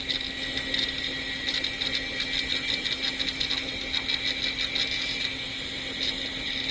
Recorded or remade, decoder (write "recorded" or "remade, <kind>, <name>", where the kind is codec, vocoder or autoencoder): recorded